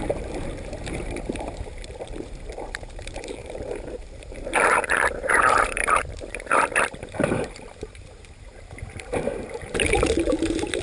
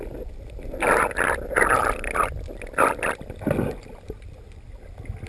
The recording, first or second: second